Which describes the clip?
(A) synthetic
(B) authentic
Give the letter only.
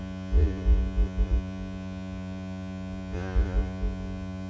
A